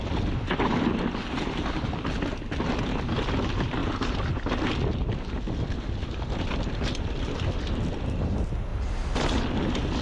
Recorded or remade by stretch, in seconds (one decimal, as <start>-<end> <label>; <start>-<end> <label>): 0.0-10.0 recorded